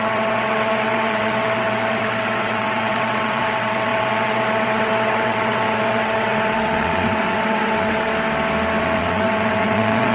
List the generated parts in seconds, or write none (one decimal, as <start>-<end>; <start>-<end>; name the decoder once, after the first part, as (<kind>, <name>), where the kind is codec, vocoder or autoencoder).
0.0-8.1 (vocoder, WaveNeXt); 8.8-10.1